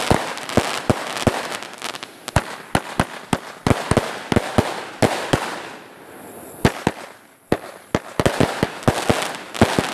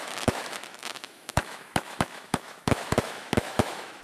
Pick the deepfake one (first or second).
second